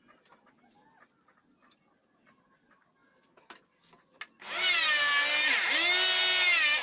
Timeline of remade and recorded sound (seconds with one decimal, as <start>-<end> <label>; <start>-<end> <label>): 0.0-6.8 recorded